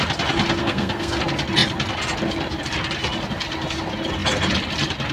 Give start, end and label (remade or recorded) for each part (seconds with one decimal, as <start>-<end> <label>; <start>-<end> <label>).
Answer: 0.0-0.6 recorded; 0.6-1.2 remade; 1.2-5.1 recorded